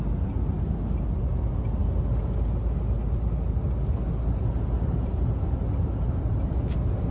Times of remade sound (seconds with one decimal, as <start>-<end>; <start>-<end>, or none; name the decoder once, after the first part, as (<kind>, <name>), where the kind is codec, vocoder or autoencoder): none